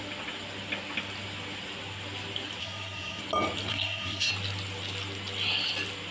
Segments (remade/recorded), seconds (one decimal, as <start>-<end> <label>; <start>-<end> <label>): 0.0-2.6 recorded; 2.6-3.2 remade; 3.2-3.7 recorded; 3.7-4.3 remade; 4.3-6.1 recorded